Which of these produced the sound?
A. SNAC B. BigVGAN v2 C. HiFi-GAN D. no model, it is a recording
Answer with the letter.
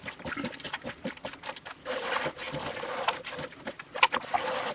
D